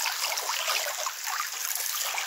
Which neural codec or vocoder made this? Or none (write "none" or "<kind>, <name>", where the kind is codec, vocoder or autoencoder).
none